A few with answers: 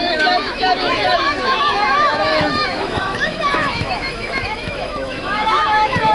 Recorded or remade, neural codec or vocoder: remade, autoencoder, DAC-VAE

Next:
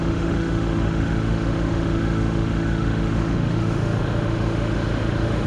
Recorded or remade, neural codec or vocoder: remade, autoencoder, DAC-VAE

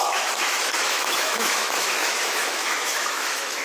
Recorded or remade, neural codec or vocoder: remade, autoencoder, DAC-VAE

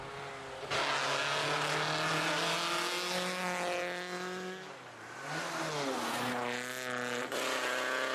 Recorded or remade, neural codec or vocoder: recorded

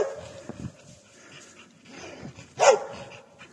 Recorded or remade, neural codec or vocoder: recorded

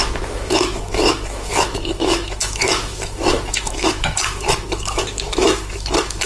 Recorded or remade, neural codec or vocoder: remade, autoencoder, DAC-VAE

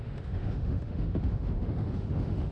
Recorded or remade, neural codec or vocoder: remade, autoencoder, DAC-VAE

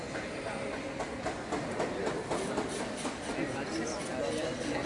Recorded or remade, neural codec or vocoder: recorded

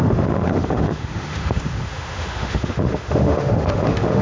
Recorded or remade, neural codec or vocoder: remade, autoencoder, DAC-VAE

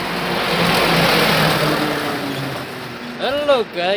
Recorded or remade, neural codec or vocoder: recorded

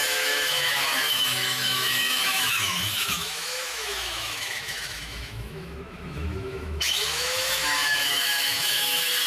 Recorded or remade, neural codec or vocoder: remade, autoencoder, DAC-VAE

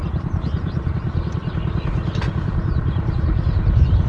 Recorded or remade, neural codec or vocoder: recorded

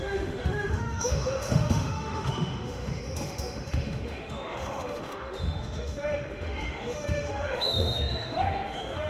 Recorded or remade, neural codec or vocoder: remade, autoencoder, DAC-VAE